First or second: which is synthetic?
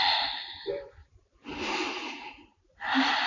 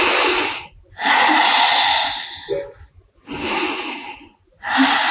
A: first